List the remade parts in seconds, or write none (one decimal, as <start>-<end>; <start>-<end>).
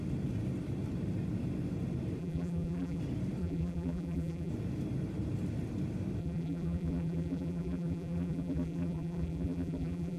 2.2-3.0; 3.4-4.5; 6.2-10.2